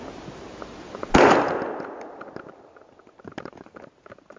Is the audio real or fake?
real